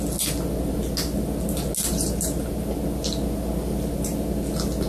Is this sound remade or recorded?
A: recorded